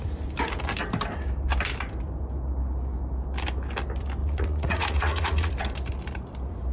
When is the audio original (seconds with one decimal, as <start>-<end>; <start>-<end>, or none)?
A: 0.0-4.2; 5.5-6.7